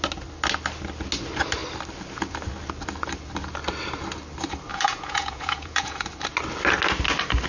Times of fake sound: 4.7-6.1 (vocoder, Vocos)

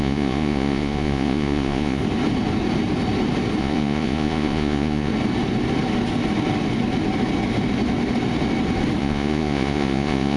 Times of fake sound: 0.0-2.0 (vocoder, Vocos); 3.6-5.1; 9.0-10.4

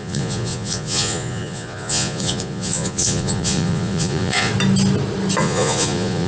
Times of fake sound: 0.0-4.5 (vocoder, Vocos); 5.4-6.3